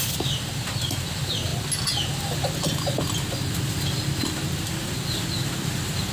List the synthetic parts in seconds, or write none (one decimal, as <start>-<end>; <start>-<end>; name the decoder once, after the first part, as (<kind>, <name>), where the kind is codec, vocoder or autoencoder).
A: none